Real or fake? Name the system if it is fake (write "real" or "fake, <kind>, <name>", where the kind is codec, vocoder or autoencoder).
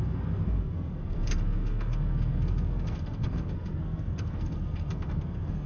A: fake, codec, SNAC